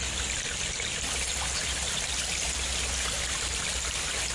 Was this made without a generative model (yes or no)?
yes